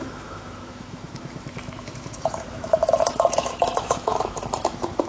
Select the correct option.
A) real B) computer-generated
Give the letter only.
B